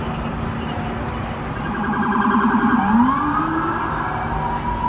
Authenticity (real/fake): real